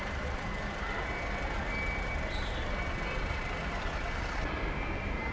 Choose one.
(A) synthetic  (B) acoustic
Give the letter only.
B